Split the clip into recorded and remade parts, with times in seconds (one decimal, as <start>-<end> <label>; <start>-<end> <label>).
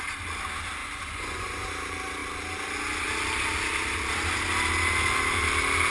0.0-0.8 recorded; 0.8-1.7 remade; 1.7-5.9 recorded